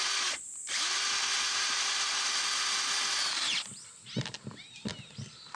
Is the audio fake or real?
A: real